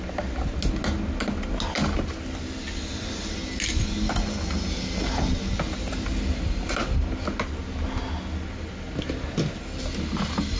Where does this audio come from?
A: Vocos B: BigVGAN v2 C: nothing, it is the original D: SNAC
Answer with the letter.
C